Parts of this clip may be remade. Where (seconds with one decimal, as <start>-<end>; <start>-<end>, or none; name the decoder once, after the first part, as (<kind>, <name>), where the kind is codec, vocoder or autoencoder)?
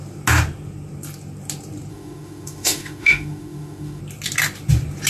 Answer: 1.9-4.0 (autoencoder, DAC-VAE)